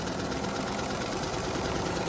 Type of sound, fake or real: fake